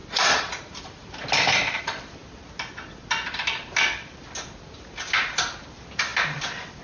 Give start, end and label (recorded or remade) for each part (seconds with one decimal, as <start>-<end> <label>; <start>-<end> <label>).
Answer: 0.0-1.8 remade; 1.8-6.8 recorded